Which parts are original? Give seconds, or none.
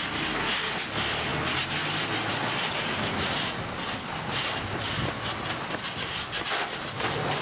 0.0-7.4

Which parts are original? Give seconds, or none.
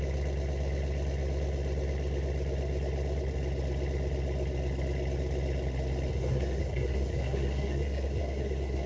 0.0-6.1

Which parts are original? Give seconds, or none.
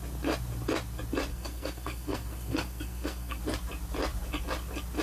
0.0-1.3; 3.4-5.0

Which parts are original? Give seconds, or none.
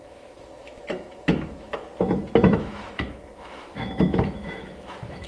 1.9-2.6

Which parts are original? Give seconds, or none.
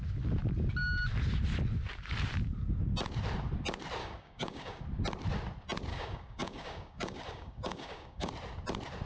0.0-4.0; 4.8-5.9; 8.3-9.1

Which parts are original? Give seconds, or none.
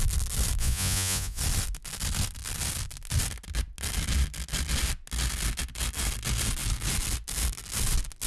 0.0-0.6; 1.4-8.3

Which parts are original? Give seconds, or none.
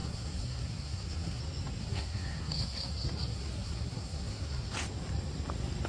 1.4-1.8; 4.7-5.9